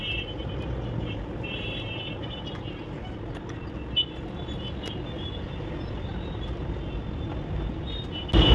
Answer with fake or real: real